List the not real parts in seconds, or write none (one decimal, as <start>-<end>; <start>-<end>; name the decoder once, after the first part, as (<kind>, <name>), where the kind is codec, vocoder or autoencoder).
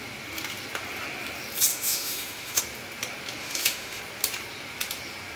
1.7-2.6 (autoencoder, DAC-VAE); 3.4-4.0